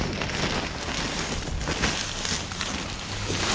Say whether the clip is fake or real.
real